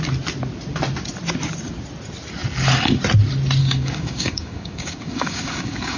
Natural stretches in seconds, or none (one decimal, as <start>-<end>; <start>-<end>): 0.0-3.6